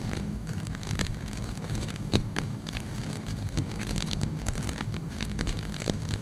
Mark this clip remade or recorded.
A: remade